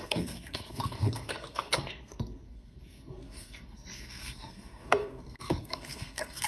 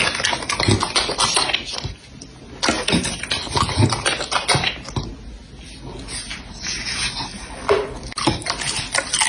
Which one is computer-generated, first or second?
first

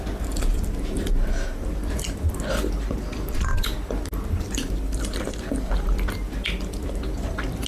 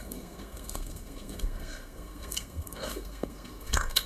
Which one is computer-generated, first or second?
second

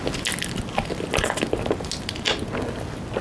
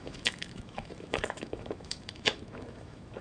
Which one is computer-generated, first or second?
second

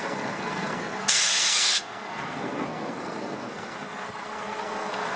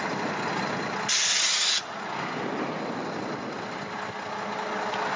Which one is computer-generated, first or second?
first